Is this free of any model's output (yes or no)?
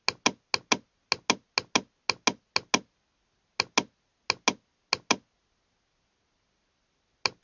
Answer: yes